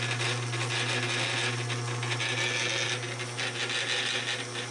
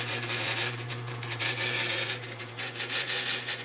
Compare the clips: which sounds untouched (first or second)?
first